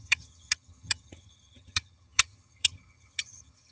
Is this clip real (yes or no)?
no